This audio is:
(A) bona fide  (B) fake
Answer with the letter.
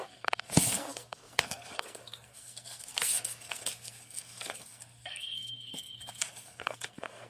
B